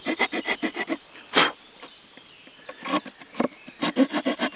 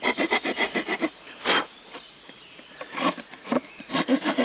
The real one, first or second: first